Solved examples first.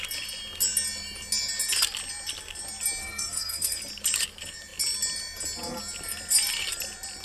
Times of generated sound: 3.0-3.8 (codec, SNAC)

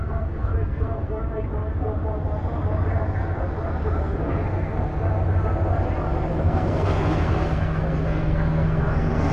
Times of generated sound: 0.0-1.2 (codec, SNAC); 4.0-4.9; 6.3-9.3